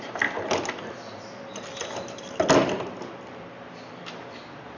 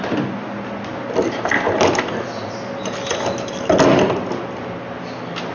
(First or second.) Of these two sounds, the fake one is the first